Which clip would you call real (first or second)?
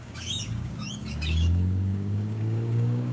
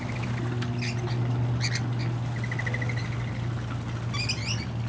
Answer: second